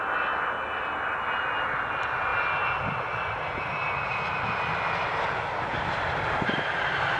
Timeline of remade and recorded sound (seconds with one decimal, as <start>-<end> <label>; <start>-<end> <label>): 0.0-7.2 recorded